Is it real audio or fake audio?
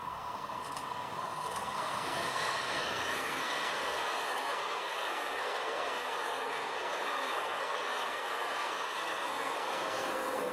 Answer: fake